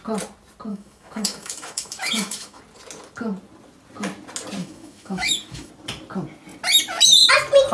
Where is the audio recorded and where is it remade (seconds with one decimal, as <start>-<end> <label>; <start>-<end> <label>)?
0.0-0.7 recorded; 0.7-2.6 remade; 2.6-4.6 recorded; 4.6-5.7 remade; 5.7-7.7 recorded